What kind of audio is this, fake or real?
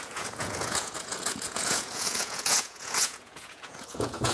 fake